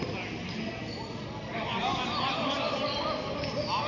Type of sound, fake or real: real